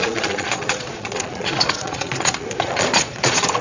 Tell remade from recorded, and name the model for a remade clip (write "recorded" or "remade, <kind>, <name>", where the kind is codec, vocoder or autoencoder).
remade, vocoder, Vocos